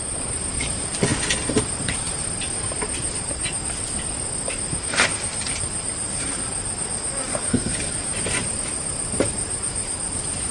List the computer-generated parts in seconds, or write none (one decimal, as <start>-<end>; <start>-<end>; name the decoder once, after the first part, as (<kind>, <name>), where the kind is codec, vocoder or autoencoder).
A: 7.3-7.9 (codec, HILCodec)